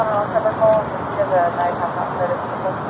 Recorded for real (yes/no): yes